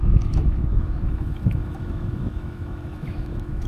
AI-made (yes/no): yes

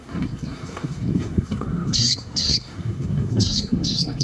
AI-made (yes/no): yes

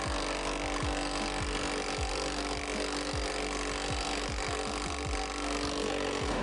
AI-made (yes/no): no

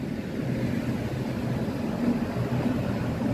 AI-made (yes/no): no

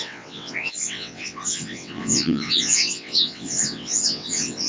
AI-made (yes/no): yes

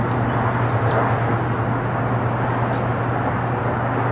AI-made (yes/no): no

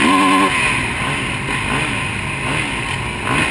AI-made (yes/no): no